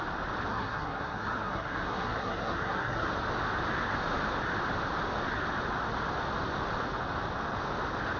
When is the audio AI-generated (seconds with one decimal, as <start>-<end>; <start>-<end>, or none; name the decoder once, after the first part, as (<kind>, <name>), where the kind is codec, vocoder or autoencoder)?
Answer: 0.5-3.1 (codec, SNAC)